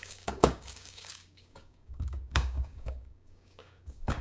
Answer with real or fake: fake